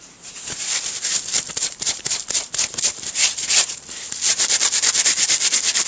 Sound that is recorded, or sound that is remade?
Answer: remade